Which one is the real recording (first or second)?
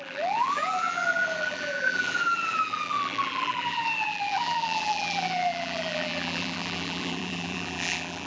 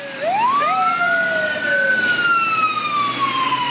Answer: second